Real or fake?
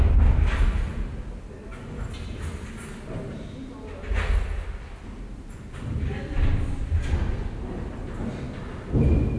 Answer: real